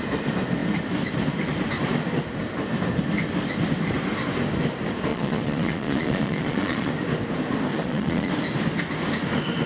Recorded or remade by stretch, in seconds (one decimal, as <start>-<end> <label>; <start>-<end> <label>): 0.0-5.1 recorded; 5.1-6.9 remade; 6.9-7.7 recorded; 7.7-8.3 remade; 8.3-9.7 recorded